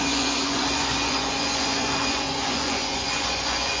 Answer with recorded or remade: remade